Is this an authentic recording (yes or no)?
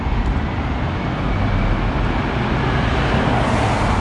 yes